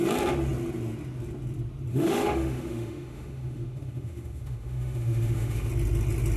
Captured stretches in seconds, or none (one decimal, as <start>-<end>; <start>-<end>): 0.0-1.9; 5.7-6.4